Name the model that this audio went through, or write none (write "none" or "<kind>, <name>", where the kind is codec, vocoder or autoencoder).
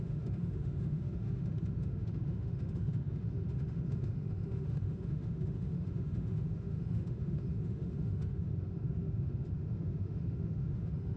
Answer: autoencoder, DAC-VAE